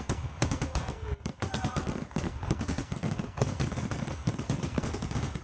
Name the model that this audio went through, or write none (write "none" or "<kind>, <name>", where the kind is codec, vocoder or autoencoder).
codec, SNAC